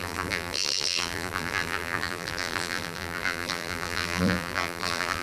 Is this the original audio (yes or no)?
no